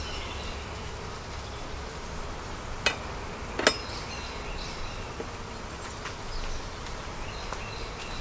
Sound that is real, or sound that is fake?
real